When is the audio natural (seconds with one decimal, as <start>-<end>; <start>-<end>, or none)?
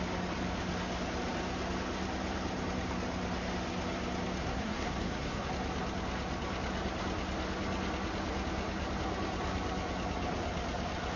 0.0-4.4; 5.5-11.2